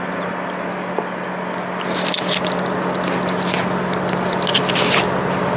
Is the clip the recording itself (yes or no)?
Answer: yes